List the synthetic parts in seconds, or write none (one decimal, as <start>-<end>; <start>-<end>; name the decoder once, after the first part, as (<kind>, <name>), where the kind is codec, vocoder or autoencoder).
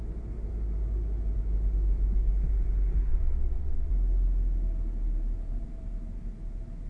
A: 3.1-3.9 (vocoder, WaveNeXt)